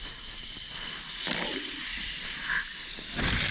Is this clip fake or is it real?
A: real